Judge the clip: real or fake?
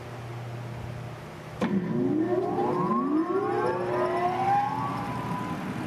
real